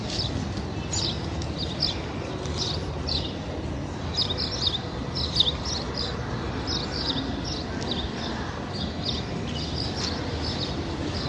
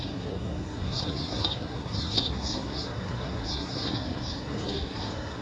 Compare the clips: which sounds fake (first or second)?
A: second